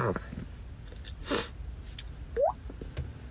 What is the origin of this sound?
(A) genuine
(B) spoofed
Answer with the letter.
A